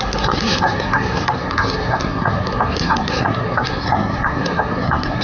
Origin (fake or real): fake